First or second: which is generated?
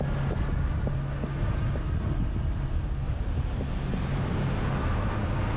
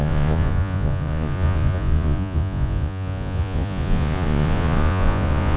second